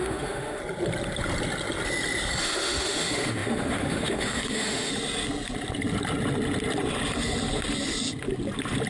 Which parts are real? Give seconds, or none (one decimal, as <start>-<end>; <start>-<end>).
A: 0.6-2.4; 4.9-8.9